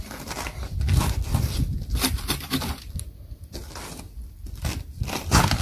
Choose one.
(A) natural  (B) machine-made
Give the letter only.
B